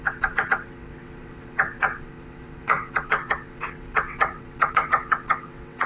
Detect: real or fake fake